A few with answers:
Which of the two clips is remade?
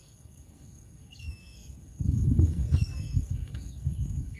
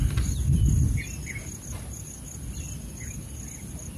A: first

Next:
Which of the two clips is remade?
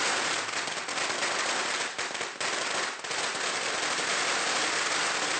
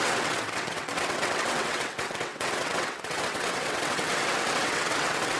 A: second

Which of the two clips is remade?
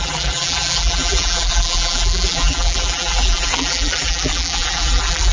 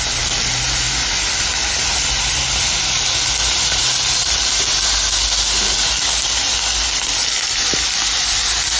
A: first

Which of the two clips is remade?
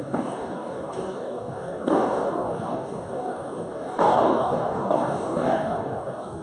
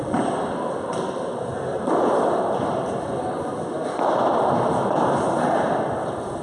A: first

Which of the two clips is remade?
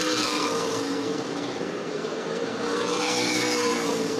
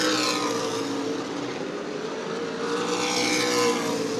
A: first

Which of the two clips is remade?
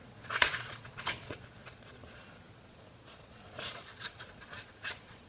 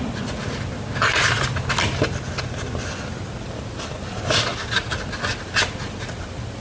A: first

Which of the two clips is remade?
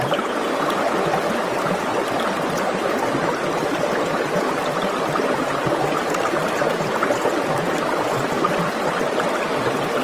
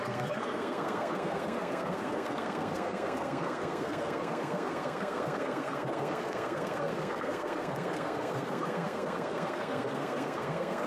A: second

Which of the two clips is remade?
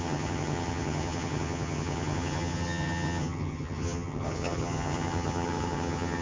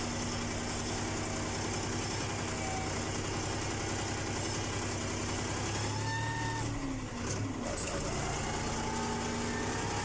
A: first